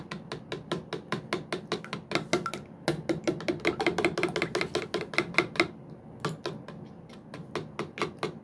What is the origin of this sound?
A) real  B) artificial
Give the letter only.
A